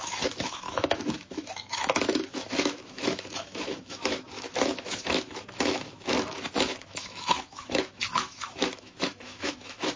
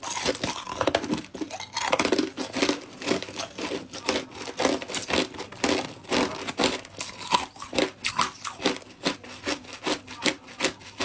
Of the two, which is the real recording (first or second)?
second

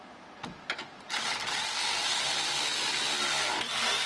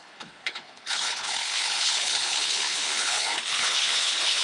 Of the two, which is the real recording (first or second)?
first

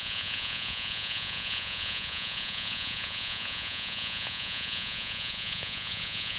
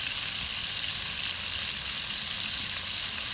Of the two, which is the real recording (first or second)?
second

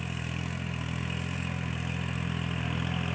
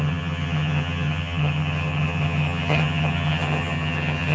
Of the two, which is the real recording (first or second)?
first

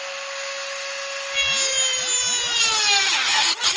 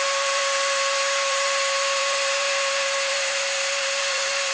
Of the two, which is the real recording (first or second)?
first